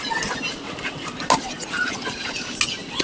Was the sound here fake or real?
real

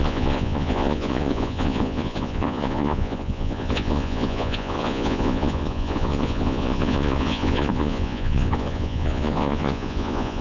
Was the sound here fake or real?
fake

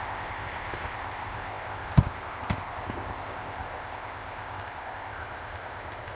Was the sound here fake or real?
fake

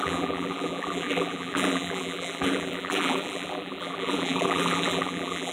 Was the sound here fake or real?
fake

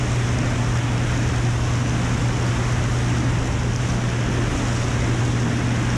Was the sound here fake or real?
real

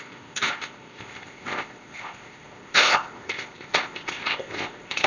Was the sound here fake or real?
fake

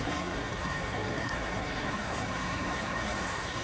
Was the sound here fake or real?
fake